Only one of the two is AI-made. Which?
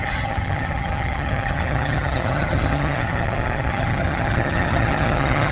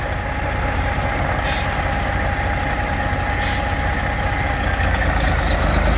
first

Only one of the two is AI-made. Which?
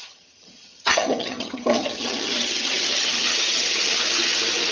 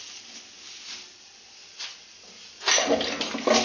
first